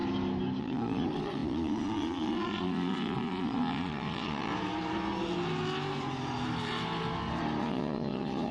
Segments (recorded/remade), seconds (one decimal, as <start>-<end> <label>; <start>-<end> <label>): 0.0-0.6 recorded; 0.6-4.5 remade; 4.5-7.6 recorded; 7.6-8.5 remade